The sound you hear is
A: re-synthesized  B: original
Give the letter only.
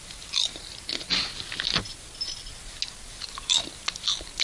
B